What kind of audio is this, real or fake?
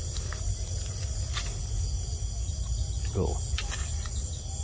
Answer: real